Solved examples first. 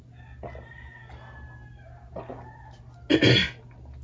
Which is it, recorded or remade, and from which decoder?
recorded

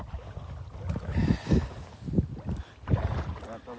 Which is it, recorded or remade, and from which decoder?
recorded